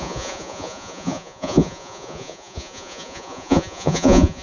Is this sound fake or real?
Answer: fake